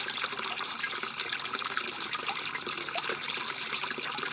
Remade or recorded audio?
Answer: recorded